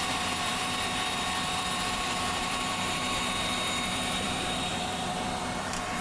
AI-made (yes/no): yes